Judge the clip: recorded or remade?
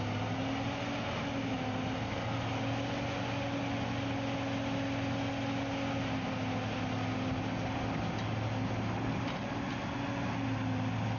recorded